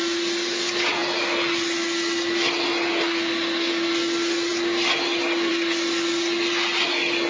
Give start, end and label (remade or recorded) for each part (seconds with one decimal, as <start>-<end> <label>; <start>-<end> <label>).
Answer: 0.0-7.3 recorded